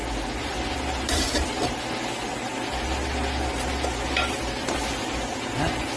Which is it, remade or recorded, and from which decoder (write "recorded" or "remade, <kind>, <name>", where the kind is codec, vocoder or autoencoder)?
recorded